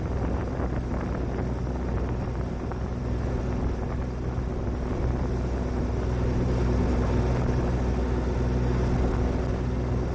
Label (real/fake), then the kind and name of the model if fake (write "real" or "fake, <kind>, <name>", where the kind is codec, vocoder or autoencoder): real